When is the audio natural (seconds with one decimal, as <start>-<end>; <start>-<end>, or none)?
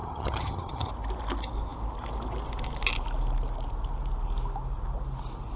0.9-5.6